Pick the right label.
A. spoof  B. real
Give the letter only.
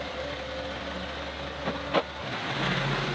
B